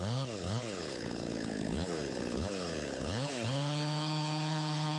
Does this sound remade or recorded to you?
remade